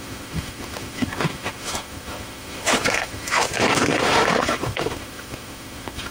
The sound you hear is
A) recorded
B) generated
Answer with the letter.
B